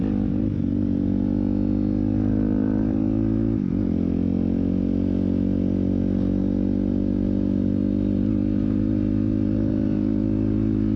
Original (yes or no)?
yes